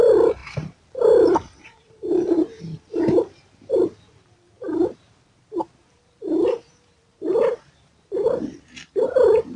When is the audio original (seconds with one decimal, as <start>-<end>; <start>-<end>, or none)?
none